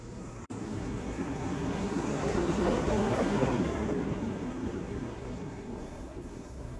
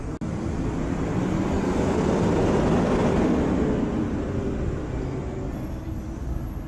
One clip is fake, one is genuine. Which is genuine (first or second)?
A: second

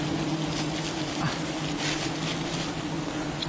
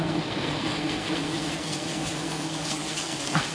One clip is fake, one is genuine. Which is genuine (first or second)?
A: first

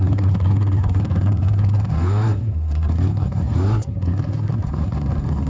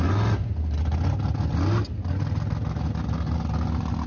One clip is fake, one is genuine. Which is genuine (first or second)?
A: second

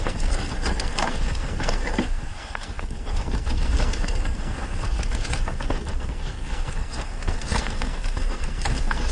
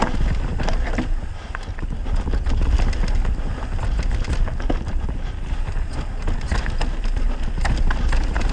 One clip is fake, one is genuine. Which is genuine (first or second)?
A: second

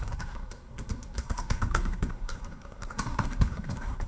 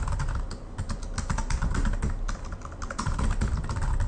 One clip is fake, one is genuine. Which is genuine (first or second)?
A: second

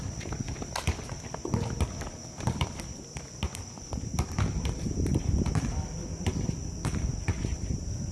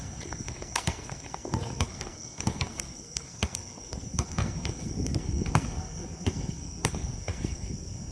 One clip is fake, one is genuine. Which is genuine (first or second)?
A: first